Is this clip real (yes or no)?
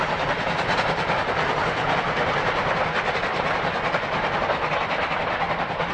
yes